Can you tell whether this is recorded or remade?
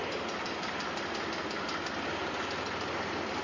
recorded